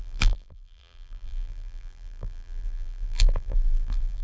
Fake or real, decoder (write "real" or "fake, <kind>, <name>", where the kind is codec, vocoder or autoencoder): fake, vocoder, BigVGAN v2